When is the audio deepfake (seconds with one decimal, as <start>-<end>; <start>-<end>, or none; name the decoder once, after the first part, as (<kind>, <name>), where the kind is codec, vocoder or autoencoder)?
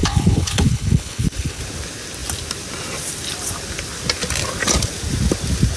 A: 0.0-1.6 (codec, HILCodec)